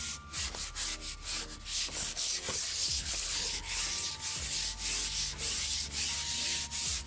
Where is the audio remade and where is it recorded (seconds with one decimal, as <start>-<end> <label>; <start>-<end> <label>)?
0.0-1.7 recorded; 1.7-2.3 remade; 2.3-2.8 recorded; 2.8-3.8 remade; 3.8-7.1 recorded